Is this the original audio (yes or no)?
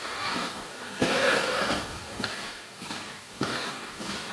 no